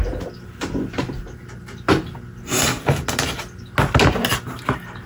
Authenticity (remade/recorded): recorded